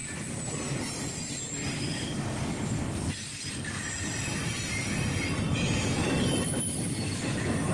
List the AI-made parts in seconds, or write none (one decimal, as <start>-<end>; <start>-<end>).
6.0-6.6